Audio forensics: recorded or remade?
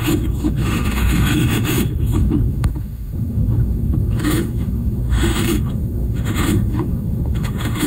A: remade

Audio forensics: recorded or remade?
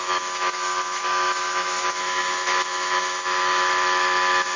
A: remade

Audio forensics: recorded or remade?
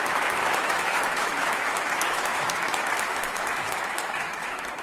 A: remade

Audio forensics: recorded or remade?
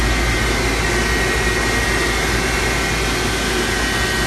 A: recorded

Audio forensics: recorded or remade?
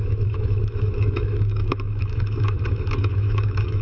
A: remade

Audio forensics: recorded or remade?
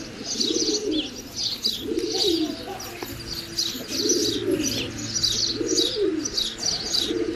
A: recorded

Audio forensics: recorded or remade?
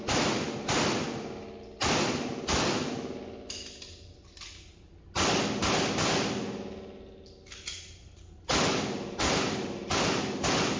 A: recorded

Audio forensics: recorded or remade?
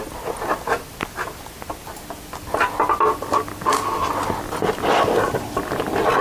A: recorded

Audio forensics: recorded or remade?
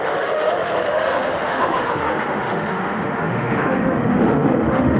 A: remade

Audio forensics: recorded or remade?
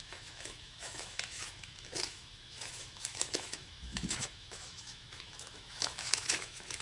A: remade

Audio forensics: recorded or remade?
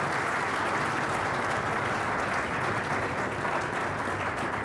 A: recorded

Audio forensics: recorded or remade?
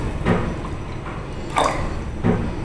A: recorded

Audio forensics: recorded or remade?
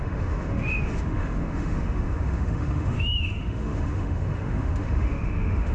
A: remade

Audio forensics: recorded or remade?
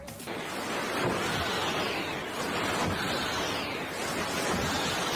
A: recorded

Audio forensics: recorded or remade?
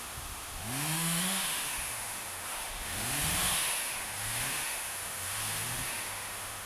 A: remade